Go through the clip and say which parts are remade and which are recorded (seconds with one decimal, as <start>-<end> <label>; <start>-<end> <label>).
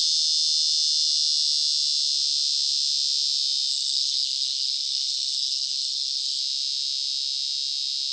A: 0.0-3.7 recorded; 3.7-6.4 remade; 6.4-8.1 recorded